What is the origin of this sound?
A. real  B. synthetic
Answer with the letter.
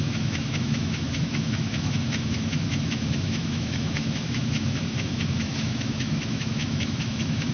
B